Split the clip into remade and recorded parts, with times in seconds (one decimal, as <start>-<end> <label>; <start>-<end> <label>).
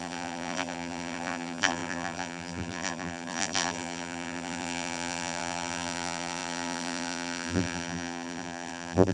0.0-9.1 remade